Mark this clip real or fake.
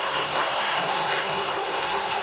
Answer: fake